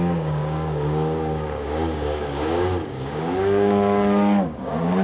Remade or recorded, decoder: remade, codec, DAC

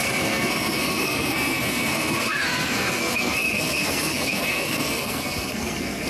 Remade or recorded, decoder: remade, codec, SNAC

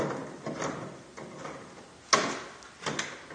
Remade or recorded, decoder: recorded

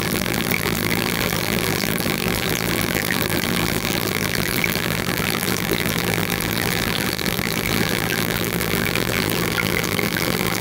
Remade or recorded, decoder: remade, vocoder, BigVGAN v2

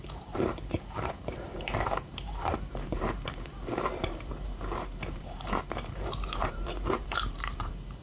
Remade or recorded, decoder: remade, vocoder, BigVGAN v2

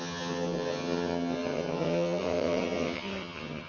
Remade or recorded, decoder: remade, vocoder, HiFi-GAN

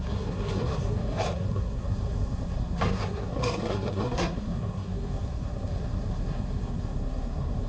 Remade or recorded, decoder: remade, codec, SNAC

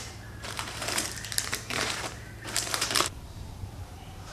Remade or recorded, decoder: remade, vocoder, BigVGAN v2